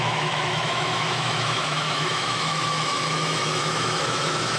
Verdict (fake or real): fake